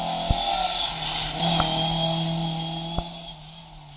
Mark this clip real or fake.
real